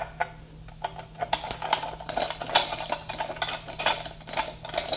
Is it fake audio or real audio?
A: real